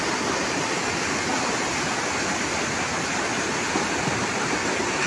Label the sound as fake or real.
real